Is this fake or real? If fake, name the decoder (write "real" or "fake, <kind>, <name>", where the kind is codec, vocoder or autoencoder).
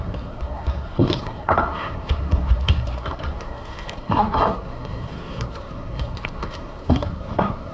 fake, codec, SNAC